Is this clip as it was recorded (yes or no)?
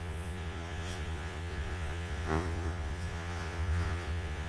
no